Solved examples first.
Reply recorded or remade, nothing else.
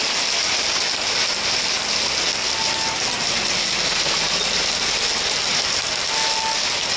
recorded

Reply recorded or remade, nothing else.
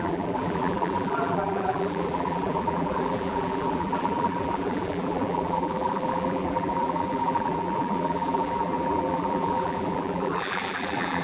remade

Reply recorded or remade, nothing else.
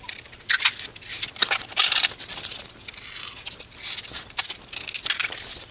recorded